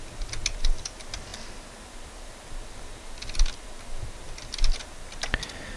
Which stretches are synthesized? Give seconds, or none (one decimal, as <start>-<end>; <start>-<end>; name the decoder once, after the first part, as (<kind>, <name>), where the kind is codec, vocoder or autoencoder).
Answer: none